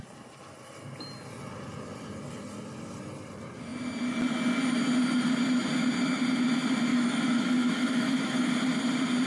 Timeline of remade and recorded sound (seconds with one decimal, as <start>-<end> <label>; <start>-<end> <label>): 0.0-6.9 recorded; 6.9-8.5 remade; 8.5-9.3 recorded